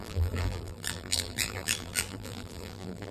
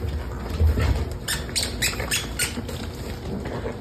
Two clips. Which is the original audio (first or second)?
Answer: second